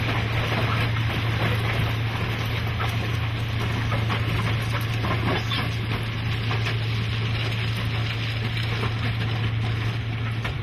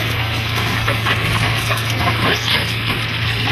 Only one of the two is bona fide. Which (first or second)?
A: first